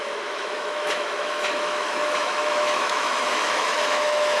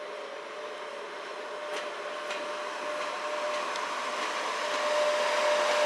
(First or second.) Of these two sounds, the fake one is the first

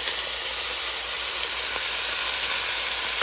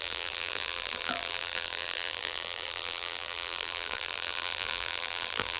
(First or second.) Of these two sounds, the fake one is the second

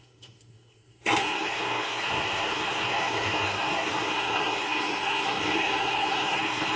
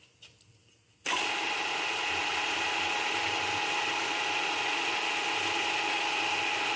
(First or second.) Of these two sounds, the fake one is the first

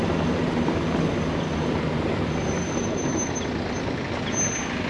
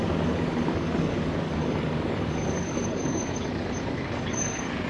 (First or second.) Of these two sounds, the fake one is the second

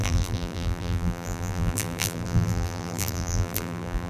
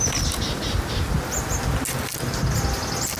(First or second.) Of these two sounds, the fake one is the first